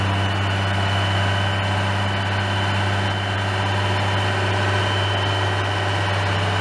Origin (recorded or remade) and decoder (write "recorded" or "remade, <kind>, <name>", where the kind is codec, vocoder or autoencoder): recorded